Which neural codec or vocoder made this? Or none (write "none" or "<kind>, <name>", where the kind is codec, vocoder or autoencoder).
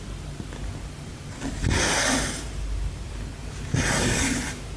none